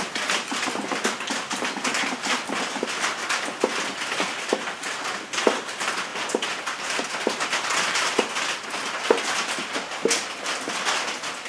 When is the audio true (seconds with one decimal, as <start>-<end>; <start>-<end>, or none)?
0.0-11.5